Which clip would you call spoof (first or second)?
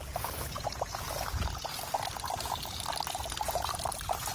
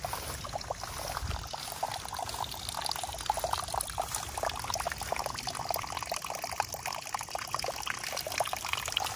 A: first